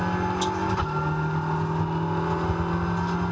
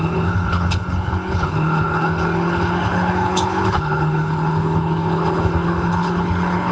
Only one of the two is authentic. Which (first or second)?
first